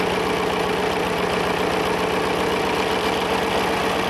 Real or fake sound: real